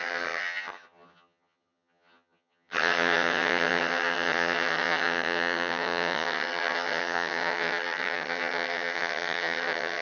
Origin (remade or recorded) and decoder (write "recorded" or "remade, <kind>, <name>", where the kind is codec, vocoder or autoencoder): remade, vocoder, HiFi-GAN